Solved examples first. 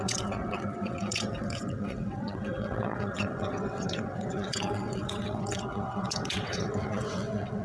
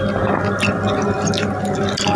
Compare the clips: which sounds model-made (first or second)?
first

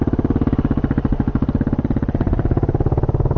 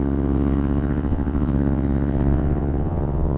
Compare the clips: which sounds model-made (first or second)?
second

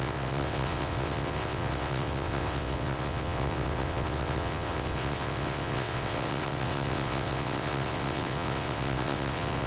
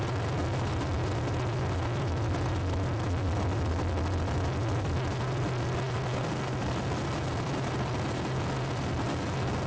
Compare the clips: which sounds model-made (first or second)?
first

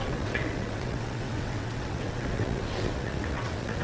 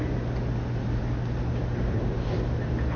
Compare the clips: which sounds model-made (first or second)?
first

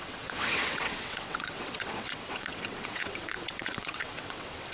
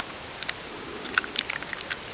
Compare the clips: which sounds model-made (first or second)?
first